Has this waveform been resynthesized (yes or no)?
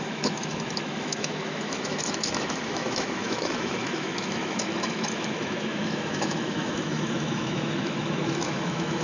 yes